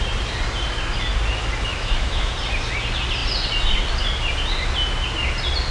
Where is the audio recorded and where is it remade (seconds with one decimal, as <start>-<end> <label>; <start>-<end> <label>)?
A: 0.0-1.7 recorded; 1.7-2.3 remade; 2.3-5.7 recorded